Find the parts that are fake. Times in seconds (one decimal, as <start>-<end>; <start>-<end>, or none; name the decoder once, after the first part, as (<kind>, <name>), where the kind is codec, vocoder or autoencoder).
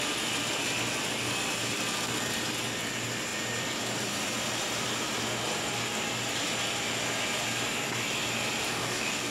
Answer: 8.7-9.3 (codec, DAC)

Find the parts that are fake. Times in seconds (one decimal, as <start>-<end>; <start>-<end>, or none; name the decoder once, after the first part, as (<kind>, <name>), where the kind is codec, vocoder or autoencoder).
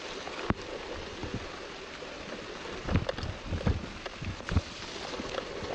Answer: 0.0-1.2 (vocoder, BigVGAN v2); 4.4-5.7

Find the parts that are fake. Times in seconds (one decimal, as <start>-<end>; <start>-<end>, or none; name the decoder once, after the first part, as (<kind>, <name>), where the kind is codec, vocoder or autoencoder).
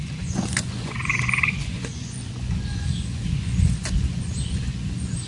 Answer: 0.0-5.3 (vocoder, Vocos)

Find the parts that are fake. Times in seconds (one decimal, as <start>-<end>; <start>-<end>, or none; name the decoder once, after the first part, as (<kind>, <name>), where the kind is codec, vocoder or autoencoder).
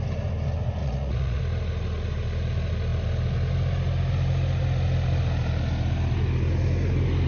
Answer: 0.8-1.4 (vocoder, Vocos)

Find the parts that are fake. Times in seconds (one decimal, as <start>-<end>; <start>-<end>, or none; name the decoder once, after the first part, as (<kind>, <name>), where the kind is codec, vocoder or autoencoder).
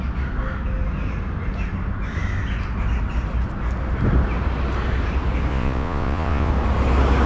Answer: 5.5-6.5 (vocoder, Vocos)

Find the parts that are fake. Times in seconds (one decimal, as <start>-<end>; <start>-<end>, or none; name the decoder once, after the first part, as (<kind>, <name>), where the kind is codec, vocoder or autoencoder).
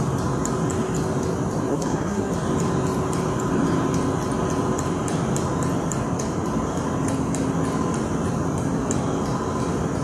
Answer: 1.7-2.3 (codec, SNAC)